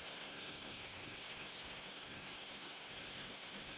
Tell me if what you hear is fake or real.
fake